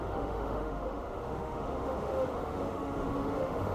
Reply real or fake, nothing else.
fake